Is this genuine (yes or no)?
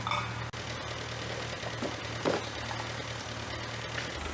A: yes